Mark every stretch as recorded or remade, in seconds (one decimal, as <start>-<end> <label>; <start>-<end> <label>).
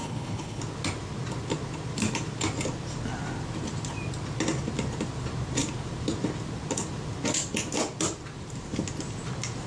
0.0-0.6 remade; 0.6-9.7 recorded